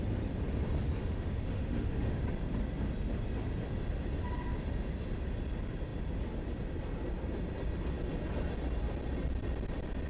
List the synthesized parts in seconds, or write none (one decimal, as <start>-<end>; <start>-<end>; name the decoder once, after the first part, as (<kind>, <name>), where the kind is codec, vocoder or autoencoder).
1.0-2.2 (autoencoder, DAC-VAE)